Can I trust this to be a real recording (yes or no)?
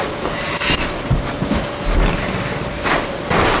yes